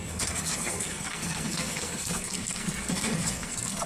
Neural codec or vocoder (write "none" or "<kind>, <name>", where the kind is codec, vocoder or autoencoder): codec, SNAC